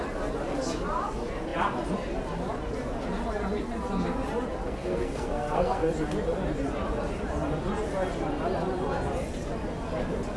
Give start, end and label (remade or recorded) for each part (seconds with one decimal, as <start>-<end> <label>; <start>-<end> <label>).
0.0-4.6 recorded; 4.6-5.9 remade; 5.9-10.4 recorded